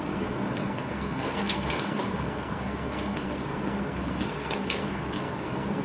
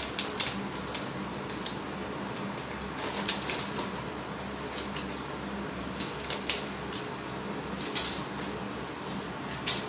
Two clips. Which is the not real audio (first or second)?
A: first